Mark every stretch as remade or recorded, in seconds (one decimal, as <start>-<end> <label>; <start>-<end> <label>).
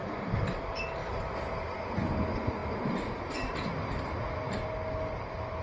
0.0-5.6 recorded